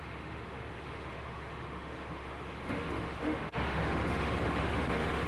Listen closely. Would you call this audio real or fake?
fake